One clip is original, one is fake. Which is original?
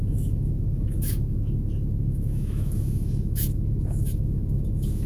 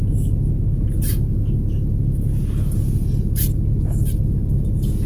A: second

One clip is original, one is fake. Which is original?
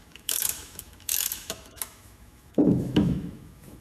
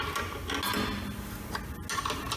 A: second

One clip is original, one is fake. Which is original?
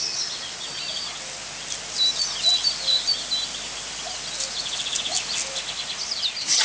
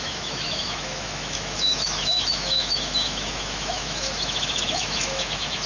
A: first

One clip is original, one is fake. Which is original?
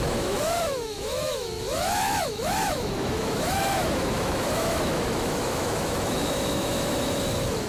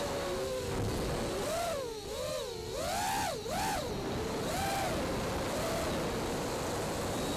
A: second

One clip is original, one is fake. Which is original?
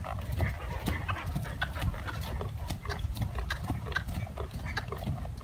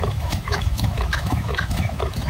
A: first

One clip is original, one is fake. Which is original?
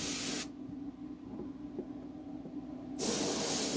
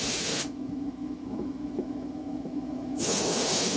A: first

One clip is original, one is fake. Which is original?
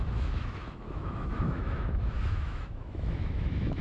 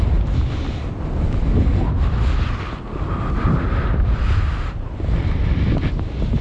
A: second